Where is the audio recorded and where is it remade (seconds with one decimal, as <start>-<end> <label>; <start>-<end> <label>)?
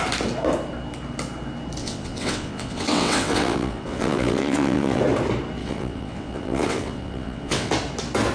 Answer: 0.0-1.8 recorded; 1.8-5.0 remade; 5.0-5.6 recorded; 5.6-7.7 remade; 7.7-8.3 recorded